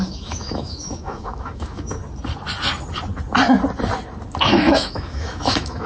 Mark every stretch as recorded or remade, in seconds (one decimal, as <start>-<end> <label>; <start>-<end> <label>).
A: 0.0-2.0 remade; 2.0-4.4 recorded; 4.4-5.9 remade